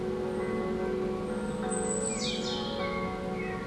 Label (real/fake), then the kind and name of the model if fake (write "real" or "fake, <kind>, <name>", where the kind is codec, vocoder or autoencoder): real